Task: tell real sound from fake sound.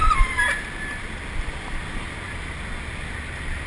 real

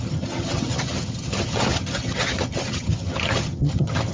fake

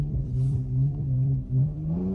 fake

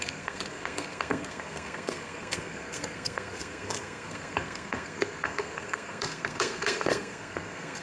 fake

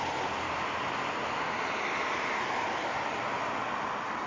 real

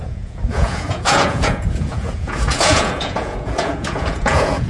fake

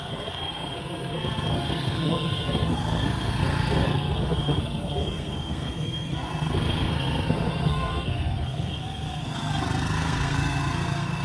fake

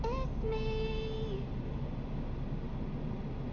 real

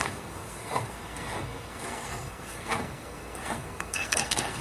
fake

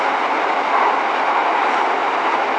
real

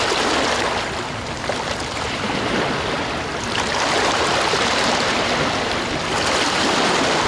real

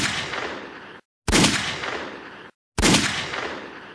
real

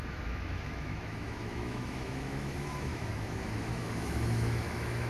fake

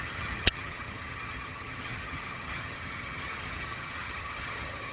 fake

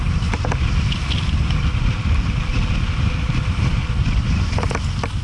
real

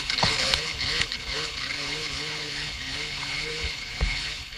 fake